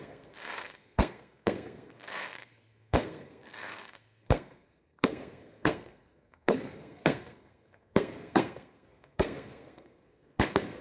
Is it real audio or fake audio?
fake